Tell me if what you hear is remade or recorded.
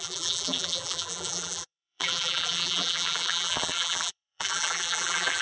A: remade